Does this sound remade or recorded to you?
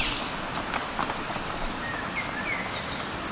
recorded